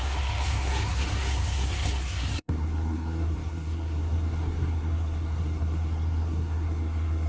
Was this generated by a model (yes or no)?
yes